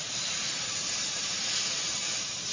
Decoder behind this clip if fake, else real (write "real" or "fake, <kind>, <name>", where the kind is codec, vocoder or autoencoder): fake, vocoder, BigVGAN v2